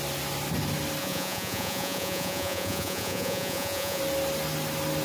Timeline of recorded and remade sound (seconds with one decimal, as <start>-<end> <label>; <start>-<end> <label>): 0.0-1.0 recorded; 1.0-4.0 remade; 4.0-5.0 recorded